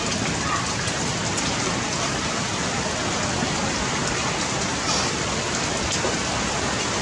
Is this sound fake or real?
real